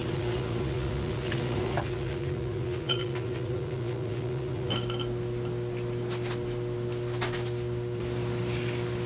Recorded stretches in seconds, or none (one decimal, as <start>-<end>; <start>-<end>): 4.7-9.1